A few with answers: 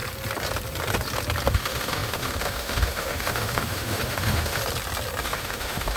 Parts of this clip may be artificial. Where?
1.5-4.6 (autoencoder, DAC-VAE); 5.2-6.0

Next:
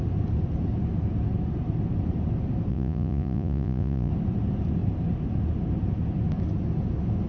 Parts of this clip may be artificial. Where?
2.7-4.1 (vocoder, Vocos)

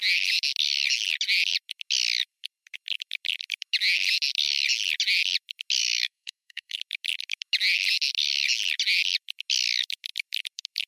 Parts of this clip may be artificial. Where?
5.8-6.8 (codec, SNAC)